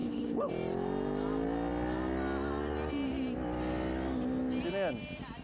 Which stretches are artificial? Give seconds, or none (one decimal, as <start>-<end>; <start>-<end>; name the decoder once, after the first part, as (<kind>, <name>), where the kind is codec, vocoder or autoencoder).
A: 0.0-0.5 (codec, HILCodec)